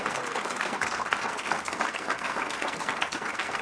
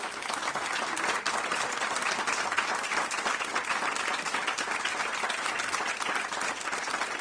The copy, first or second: first